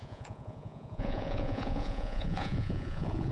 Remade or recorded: remade